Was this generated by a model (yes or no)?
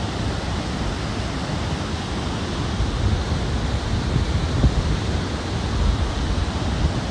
no